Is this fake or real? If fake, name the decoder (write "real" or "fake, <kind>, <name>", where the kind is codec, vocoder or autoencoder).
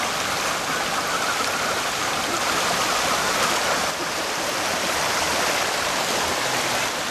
real